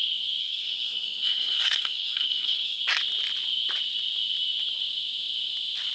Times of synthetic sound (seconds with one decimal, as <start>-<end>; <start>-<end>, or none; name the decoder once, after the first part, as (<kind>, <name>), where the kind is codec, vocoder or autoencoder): 0.4-2.8 (codec, SNAC)